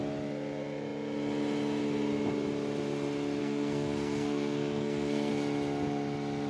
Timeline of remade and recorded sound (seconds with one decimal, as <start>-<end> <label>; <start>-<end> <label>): 0.0-3.4 recorded; 3.4-5.3 remade; 5.3-6.5 recorded